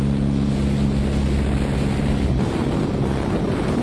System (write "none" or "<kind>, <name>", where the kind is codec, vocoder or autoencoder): none